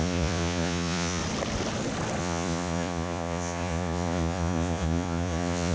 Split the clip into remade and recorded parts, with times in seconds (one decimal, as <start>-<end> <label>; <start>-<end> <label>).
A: 0.0-1.2 remade; 1.2-2.2 recorded; 2.2-5.7 remade